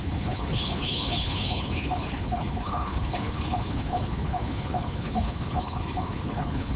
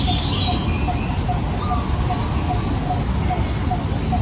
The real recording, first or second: second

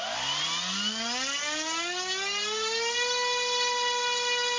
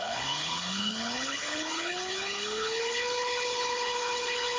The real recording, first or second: first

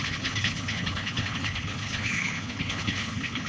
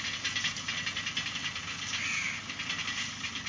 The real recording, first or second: second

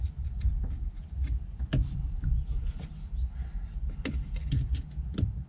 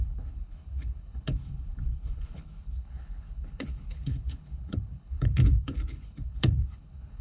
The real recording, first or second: first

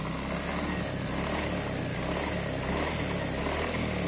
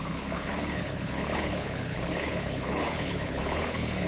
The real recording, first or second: first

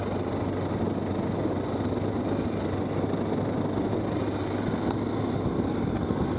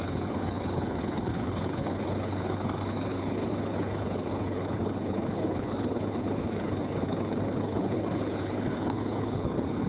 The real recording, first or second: first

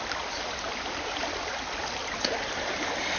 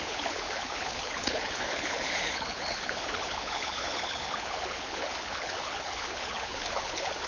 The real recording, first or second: first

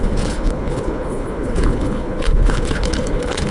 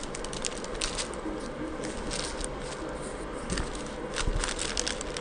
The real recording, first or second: second